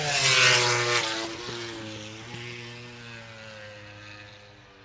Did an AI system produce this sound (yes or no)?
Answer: no